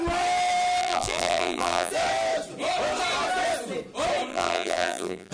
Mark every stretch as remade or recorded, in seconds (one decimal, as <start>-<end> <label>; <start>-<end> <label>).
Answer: 0.0-0.8 recorded; 0.8-1.9 remade; 1.9-4.3 recorded; 4.3-5.3 remade